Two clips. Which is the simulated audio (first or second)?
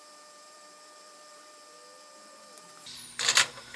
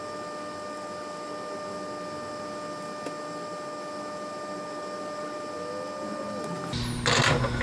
first